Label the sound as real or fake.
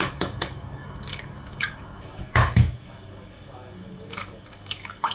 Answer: fake